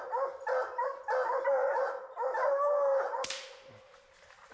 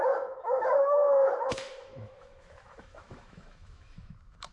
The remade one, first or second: second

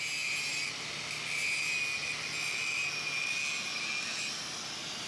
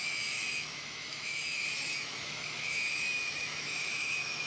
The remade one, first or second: second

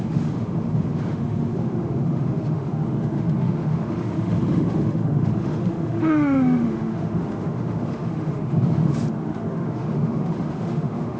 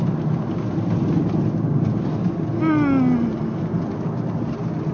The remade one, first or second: first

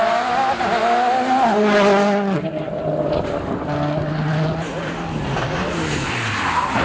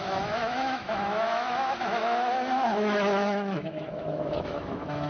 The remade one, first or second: second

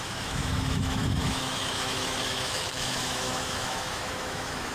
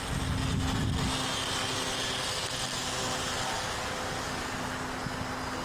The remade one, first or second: first